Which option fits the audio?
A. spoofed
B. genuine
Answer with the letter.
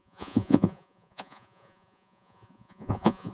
A